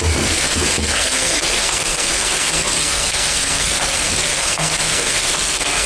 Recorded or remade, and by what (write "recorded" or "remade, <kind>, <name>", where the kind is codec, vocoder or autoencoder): remade, codec, SNAC